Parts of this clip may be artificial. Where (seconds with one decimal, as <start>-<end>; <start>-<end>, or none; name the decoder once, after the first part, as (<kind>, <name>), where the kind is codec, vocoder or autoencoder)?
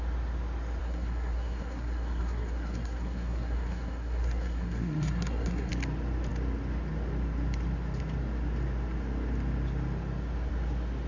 0.8-5.7 (codec, SNAC)